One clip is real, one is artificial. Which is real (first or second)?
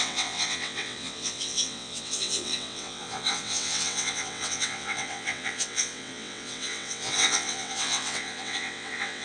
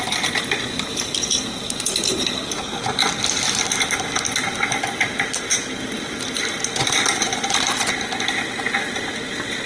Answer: second